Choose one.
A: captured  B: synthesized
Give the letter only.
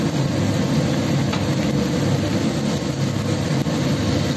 A